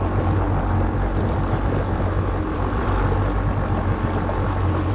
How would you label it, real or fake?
real